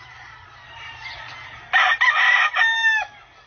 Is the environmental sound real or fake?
real